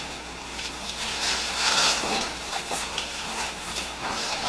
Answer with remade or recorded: remade